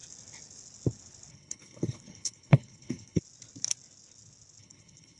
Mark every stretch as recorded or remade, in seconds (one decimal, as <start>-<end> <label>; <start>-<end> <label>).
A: 0.0-1.3 recorded; 1.3-3.2 remade; 3.2-4.6 recorded; 4.6-5.2 remade